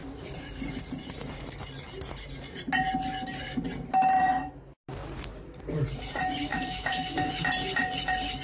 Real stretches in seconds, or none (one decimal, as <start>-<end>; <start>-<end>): 0.0-6.5; 7.3-8.4